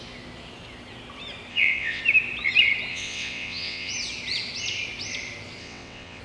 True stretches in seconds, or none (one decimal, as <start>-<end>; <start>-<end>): 0.0-1.5; 2.0-2.9; 3.9-5.6